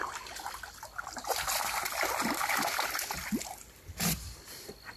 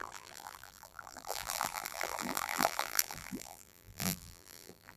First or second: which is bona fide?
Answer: first